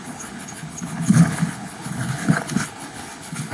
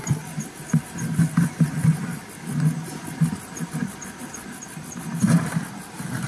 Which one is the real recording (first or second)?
second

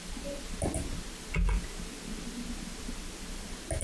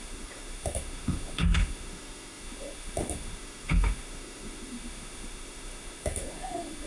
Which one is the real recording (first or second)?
first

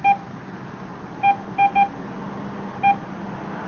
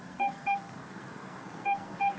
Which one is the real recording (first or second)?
first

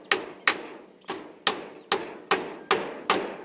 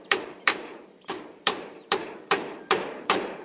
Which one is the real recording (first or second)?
first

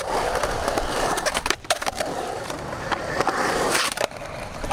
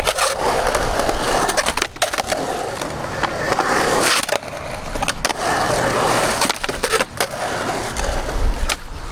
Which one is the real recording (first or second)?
second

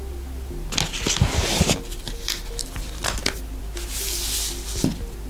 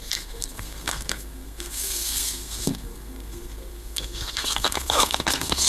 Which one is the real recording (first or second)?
first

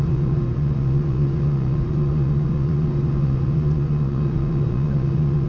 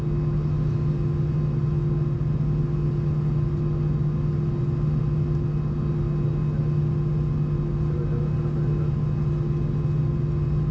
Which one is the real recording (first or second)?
second